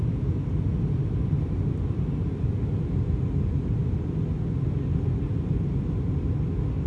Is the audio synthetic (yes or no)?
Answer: no